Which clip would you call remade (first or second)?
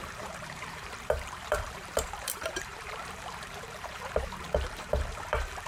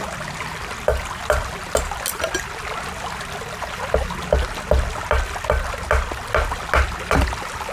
first